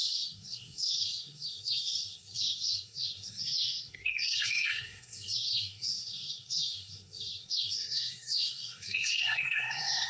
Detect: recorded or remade remade